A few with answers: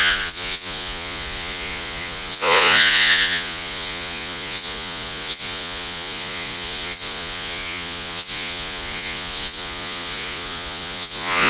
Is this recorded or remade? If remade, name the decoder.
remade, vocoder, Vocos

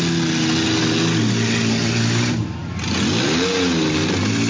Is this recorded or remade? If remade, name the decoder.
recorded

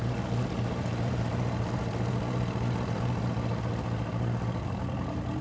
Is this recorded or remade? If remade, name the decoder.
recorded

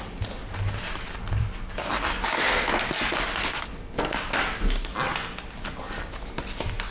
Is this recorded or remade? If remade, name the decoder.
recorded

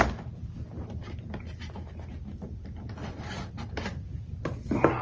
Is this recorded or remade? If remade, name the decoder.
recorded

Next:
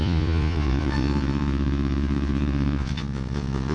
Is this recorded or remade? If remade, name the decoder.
remade, vocoder, Vocos